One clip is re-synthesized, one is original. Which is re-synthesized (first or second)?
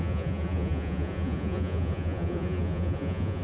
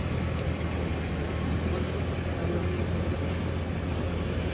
first